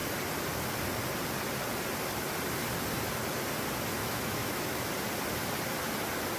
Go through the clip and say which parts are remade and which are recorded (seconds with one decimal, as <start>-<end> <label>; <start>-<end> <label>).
0.0-4.0 recorded; 4.0-4.9 remade; 4.9-6.4 recorded